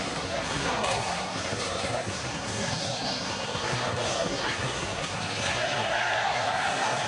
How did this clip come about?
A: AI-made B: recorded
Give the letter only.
A